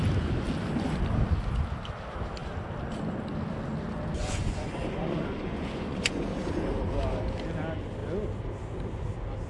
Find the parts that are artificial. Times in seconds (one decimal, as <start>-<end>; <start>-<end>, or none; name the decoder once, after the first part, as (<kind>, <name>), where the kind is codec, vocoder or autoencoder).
4.2-6.2 (vocoder, Vocos)

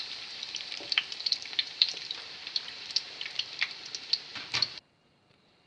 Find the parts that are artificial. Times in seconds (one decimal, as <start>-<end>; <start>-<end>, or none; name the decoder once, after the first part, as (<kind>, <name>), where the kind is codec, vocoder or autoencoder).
0.0-5.7 (vocoder, BigVGAN v2)

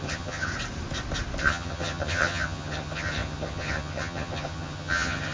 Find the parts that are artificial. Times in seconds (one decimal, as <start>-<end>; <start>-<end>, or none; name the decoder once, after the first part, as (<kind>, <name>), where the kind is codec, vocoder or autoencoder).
0.0-0.5 (vocoder, HiFi-GAN); 1.4-5.3

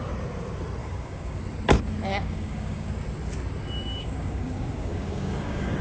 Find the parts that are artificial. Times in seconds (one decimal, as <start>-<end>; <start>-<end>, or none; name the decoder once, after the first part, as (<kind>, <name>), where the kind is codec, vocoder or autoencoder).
0.8-1.4 (codec, DAC); 2.1-2.9; 3.9-5.8

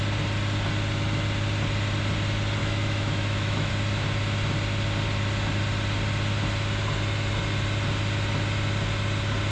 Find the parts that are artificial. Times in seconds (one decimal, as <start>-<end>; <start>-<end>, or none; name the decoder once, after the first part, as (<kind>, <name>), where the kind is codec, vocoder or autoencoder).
2.6-3.7 (autoencoder, DAC-VAE)

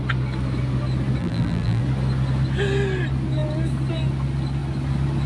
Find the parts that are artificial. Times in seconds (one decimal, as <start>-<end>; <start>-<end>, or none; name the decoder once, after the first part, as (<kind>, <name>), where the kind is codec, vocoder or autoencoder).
1.2-1.8 (vocoder, BigVGAN v2)

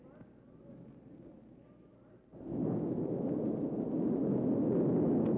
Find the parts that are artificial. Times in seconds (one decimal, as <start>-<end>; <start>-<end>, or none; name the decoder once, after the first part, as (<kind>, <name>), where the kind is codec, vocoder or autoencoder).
none